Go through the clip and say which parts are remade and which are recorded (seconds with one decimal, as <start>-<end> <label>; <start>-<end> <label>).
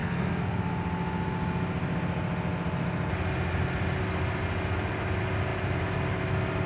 0.0-0.6 remade; 0.6-6.7 recorded